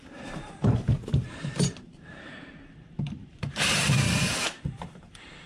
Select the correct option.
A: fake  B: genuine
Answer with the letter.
A